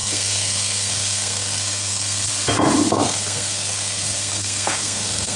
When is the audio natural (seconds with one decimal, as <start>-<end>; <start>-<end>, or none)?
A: 2.3-2.9